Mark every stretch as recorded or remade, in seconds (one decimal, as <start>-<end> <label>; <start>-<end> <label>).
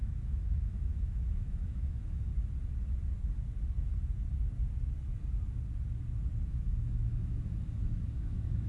0.0-2.3 remade; 2.3-6.5 recorded; 6.5-8.7 remade